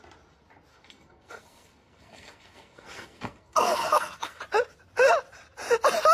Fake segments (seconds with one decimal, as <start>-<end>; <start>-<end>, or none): 0.7-4.4